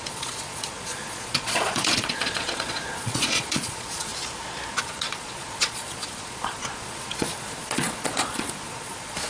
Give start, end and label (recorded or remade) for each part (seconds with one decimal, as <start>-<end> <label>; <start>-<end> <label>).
0.0-4.1 remade; 4.1-4.7 recorded; 4.7-9.3 remade